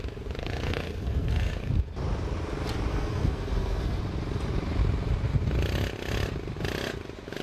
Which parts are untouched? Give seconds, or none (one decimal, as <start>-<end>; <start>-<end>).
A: 0.0-0.4; 1.7-2.9; 4.0-7.4